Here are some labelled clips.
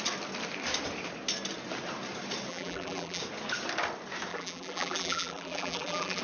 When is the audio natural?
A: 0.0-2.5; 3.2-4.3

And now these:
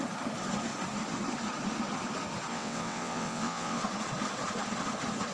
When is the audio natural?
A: 0.0-2.5; 3.8-5.3

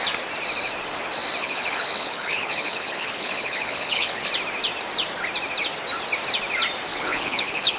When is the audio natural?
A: 0.0-1.4; 4.3-6.9

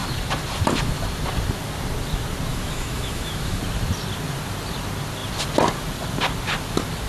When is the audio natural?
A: 0.0-2.5; 3.6-7.1

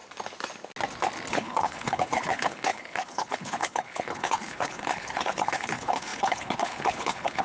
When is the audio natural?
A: 0.0-1.3

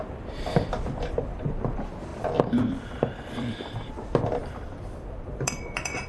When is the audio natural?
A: none